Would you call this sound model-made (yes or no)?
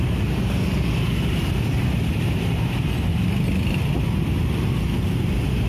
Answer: no